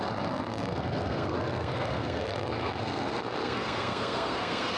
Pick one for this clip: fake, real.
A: fake